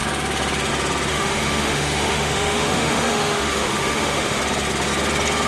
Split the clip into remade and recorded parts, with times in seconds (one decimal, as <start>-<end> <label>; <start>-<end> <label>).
0.0-1.1 recorded; 1.1-4.4 remade; 4.4-5.5 recorded